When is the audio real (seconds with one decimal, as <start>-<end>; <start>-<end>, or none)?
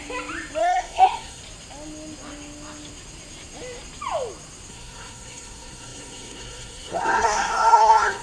0.0-0.6; 1.4-4.7